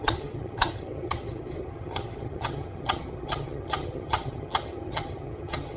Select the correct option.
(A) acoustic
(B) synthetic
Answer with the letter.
B